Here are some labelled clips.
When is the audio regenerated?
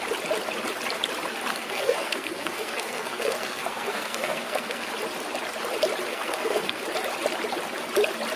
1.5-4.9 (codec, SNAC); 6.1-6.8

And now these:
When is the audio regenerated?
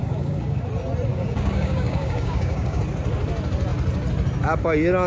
0.0-0.6 (codec, DAC); 1.1-2.8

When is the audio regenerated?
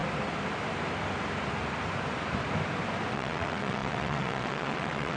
3.1-5.2 (vocoder, WaveNeXt)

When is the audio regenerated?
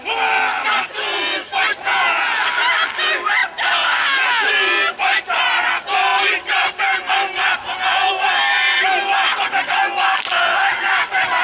1.8-2.4 (vocoder, Vocos)